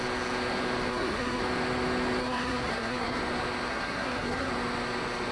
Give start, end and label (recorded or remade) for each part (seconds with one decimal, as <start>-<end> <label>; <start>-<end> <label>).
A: 0.0-0.9 recorded; 0.9-1.4 remade; 1.4-2.2 recorded; 2.2-3.2 remade; 3.2-3.7 recorded; 3.7-4.5 remade; 4.5-5.3 recorded